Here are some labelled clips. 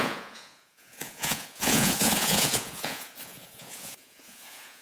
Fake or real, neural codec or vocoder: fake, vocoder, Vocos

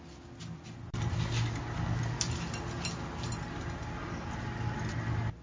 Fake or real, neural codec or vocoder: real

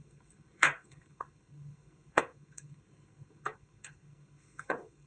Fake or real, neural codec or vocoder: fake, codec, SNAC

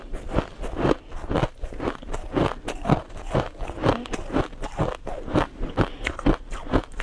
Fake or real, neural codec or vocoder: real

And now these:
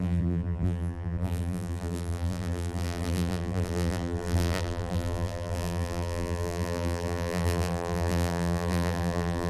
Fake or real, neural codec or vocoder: fake, vocoder, BigVGAN v2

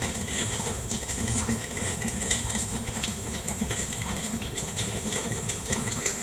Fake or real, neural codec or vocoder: fake, autoencoder, DAC-VAE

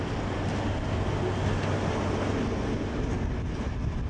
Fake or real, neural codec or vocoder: real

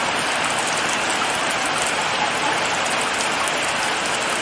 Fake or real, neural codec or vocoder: real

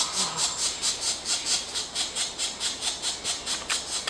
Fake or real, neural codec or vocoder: real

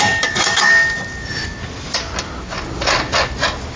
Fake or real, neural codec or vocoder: real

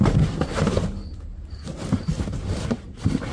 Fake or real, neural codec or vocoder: real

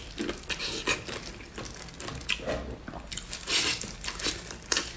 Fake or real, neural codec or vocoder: real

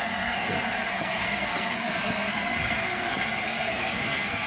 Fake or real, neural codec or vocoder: fake, codec, SNAC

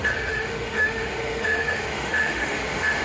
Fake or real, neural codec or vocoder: fake, autoencoder, DAC-VAE